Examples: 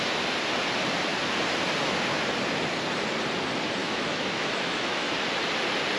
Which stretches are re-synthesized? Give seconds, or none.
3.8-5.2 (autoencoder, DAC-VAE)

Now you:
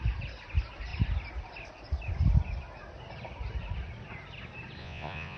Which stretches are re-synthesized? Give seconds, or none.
4.8-5.4 (vocoder, Vocos)